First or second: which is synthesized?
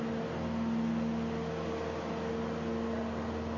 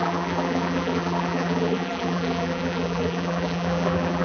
second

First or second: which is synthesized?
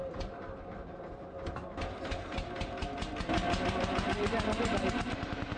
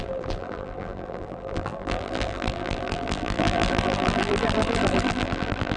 second